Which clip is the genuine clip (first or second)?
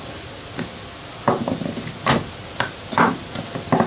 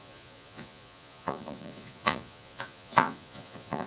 first